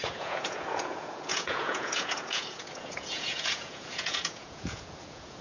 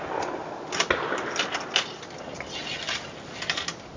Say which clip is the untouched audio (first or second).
second